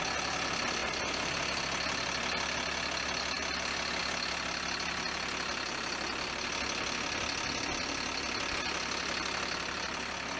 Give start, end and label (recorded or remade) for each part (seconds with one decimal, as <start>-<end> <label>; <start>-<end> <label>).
0.0-0.8 recorded; 0.8-1.6 remade; 1.6-10.4 recorded